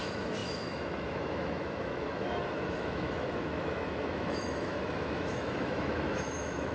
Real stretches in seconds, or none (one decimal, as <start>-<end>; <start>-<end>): none